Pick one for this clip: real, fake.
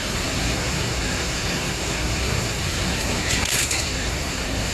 fake